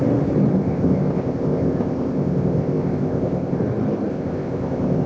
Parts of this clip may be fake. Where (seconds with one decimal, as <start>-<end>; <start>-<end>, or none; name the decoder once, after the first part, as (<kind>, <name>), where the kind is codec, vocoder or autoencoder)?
0.5-3.6 (codec, ZipCodec); 4.1-5.1